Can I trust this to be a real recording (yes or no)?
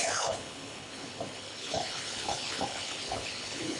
no